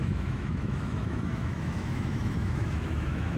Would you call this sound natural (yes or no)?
no